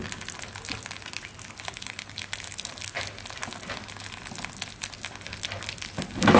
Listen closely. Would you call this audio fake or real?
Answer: real